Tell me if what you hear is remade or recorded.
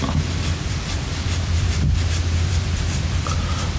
remade